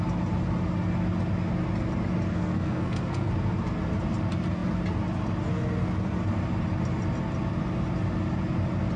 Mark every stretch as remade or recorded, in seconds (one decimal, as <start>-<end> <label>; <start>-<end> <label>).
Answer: 0.0-2.3 recorded; 2.3-3.3 remade; 3.3-9.0 recorded